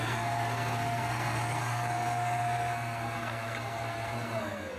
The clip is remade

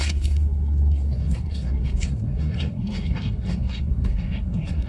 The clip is remade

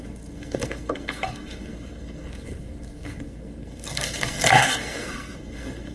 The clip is remade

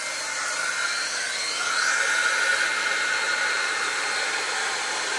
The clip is recorded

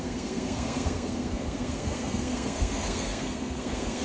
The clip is remade